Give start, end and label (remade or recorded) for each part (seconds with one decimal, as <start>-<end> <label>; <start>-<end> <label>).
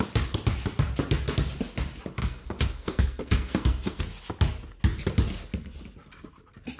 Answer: 0.0-2.2 recorded; 2.2-4.0 remade; 4.0-6.8 recorded